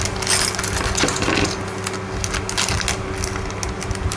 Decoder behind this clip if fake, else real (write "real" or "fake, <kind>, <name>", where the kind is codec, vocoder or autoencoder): real